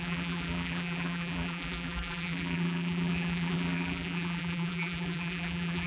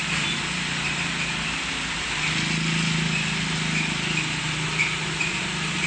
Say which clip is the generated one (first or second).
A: first